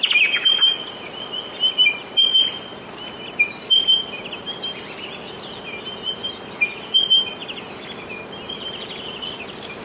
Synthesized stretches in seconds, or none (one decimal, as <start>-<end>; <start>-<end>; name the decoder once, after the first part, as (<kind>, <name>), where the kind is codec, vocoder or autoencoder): none